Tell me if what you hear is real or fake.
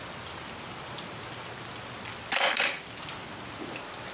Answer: real